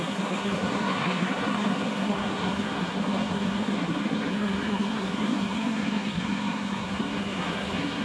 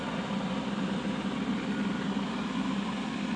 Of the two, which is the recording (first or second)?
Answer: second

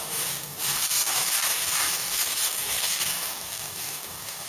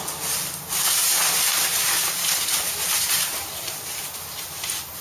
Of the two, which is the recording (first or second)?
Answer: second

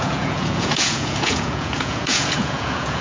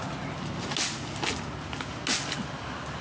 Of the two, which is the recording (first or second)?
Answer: second